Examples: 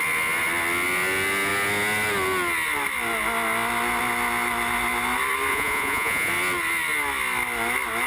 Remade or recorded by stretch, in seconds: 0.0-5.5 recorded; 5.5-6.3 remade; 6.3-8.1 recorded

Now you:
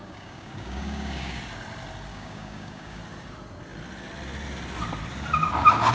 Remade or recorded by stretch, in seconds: 0.0-1.4 remade; 1.4-2.1 recorded; 2.1-3.0 remade; 3.0-5.9 recorded

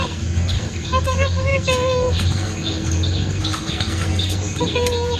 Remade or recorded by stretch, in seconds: 0.0-5.2 remade

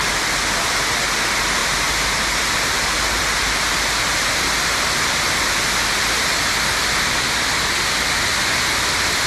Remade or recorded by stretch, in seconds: 0.0-9.3 recorded

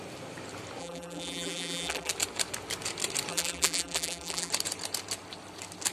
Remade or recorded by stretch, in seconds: 0.0-0.8 recorded; 0.8-2.1 remade; 2.1-3.3 recorded; 3.3-4.5 remade; 4.5-5.9 recorded